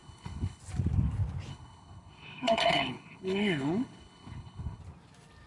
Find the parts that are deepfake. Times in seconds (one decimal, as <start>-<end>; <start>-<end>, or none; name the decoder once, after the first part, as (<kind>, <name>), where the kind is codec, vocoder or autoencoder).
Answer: 0.0-0.6 (codec, HILCodec); 1.5-4.8